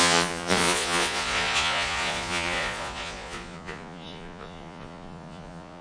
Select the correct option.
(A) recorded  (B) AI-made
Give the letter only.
B